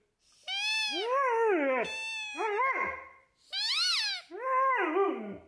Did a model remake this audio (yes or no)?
no